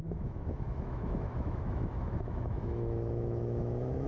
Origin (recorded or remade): remade